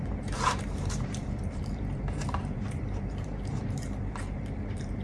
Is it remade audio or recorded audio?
remade